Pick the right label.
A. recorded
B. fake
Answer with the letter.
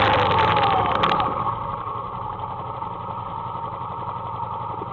A